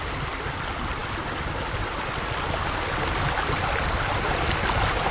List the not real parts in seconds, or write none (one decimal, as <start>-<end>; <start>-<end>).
none